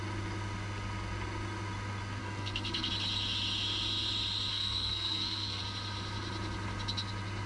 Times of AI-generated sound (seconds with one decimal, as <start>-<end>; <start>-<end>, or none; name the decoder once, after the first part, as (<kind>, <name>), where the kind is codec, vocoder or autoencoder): 2.2-2.9 (codec, SNAC); 4.5-5.6